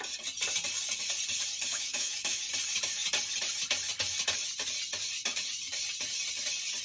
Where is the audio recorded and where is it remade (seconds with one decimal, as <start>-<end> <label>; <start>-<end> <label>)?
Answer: 0.0-1.7 recorded; 1.7-2.4 remade; 2.4-6.8 recorded